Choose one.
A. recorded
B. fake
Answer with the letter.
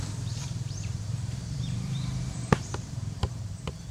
B